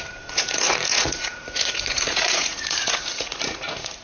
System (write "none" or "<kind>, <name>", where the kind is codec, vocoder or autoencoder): vocoder, Vocos